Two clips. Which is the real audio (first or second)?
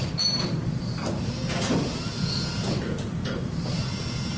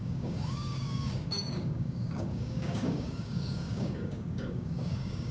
first